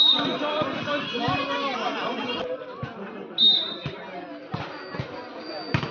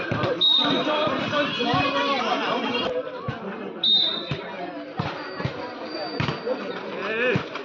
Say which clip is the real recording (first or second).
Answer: first